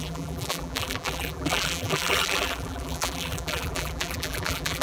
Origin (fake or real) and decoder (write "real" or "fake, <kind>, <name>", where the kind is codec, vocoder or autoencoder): fake, vocoder, BigVGAN v2